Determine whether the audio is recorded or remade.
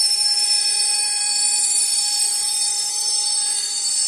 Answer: remade